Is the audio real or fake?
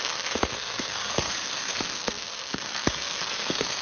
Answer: fake